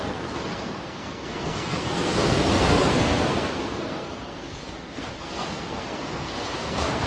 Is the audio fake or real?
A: fake